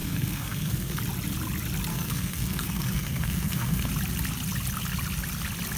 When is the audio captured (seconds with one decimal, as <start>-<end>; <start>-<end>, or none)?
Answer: 1.0-1.9; 3.9-5.8